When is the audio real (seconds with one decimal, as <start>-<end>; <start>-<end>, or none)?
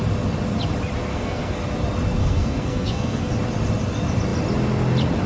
0.0-1.1; 1.6-2.2; 3.3-5.3